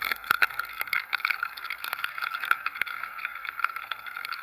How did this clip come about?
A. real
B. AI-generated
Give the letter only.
B